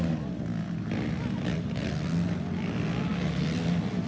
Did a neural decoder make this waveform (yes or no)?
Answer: no